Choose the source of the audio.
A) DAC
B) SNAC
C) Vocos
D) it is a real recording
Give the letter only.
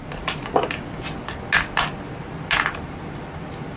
D